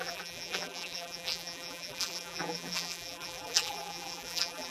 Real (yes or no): no